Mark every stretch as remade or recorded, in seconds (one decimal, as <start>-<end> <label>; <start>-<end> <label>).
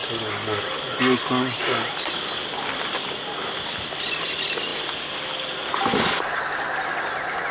0.0-7.5 recorded